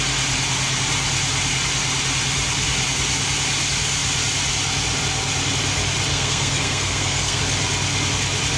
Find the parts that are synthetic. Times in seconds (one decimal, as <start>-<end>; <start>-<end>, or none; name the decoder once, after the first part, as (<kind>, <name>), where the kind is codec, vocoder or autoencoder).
6.1-7.4 (codec, SNAC)